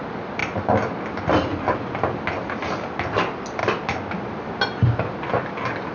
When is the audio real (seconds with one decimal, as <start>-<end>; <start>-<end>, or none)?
0.0-5.9